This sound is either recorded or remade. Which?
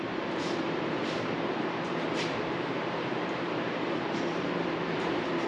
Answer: remade